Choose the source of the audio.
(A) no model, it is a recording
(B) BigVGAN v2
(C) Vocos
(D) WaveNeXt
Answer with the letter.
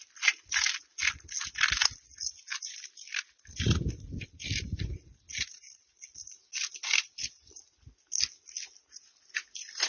A